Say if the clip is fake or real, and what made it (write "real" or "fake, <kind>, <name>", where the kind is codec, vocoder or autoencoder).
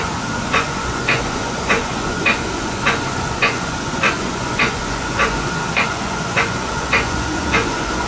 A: fake, vocoder, Vocos